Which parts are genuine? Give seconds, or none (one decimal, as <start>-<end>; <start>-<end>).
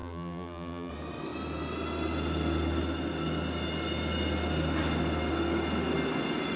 0.9-6.6